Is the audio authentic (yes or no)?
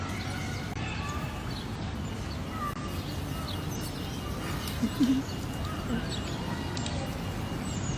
yes